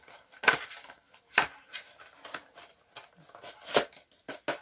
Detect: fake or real real